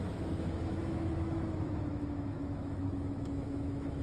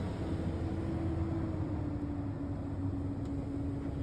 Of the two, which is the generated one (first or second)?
first